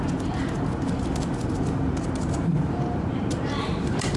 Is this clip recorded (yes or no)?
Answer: yes